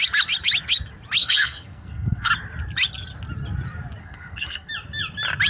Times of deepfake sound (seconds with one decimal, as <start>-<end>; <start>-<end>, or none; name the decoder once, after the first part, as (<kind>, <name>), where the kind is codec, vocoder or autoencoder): 1.2-2.3 (codec, SNAC); 4.0-4.7